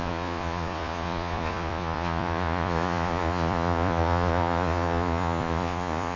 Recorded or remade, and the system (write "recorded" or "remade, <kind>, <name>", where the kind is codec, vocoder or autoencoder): remade, vocoder, Vocos